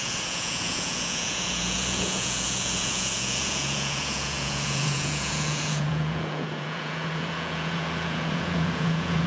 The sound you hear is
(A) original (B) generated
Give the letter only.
B